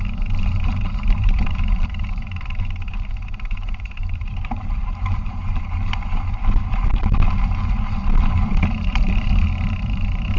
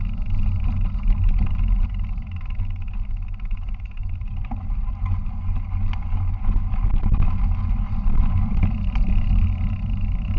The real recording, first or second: second